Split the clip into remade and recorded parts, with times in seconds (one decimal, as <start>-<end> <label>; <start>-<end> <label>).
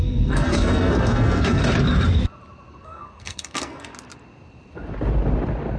0.0-1.6 remade; 1.6-2.7 recorded; 2.7-3.9 remade; 3.9-5.8 recorded